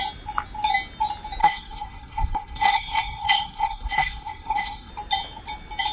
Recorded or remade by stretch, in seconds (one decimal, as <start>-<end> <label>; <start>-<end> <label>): 0.0-1.4 recorded; 1.4-4.9 remade; 4.9-5.9 recorded